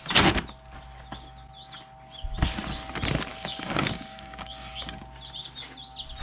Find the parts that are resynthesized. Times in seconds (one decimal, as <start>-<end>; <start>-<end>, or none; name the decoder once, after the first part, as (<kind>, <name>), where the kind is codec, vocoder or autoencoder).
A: 3.3-5.0 (codec, DAC)